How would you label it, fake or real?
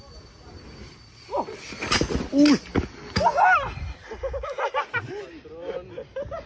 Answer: real